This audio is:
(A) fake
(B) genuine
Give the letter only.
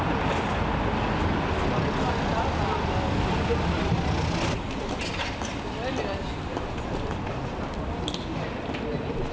B